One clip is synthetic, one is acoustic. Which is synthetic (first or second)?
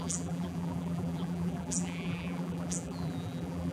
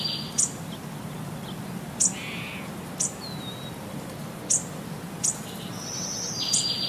first